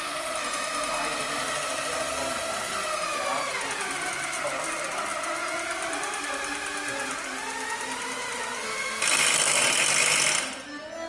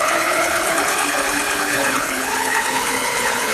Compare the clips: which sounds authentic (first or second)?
first